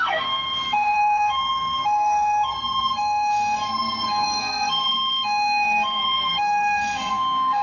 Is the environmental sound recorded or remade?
remade